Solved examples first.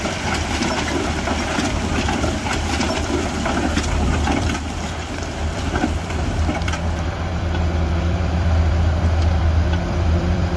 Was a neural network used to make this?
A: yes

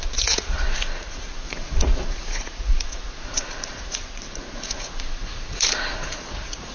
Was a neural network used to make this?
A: yes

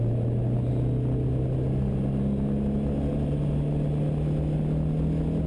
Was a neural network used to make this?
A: no